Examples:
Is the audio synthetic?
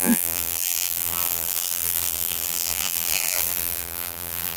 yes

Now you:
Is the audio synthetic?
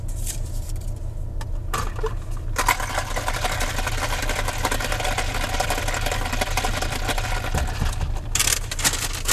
no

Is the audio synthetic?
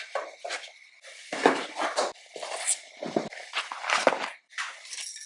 no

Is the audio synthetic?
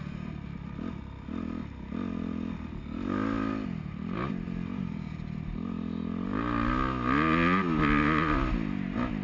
no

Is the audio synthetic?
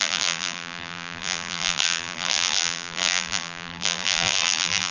yes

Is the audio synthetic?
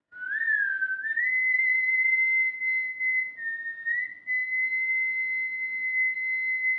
no